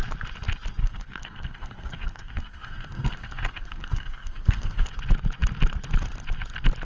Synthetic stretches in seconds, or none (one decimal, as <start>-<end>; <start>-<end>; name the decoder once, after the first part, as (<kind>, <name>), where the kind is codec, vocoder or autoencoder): 0.8-4.9 (codec, SNAC)